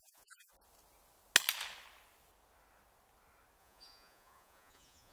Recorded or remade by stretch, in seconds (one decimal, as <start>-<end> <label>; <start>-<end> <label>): 0.0-0.5 remade; 0.5-3.6 recorded; 3.6-5.1 remade